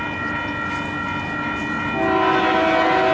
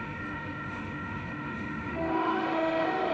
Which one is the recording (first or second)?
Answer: first